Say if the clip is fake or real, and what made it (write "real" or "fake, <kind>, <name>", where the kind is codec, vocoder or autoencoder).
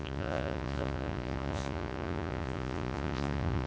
fake, vocoder, Vocos